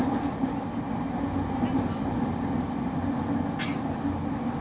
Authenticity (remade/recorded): recorded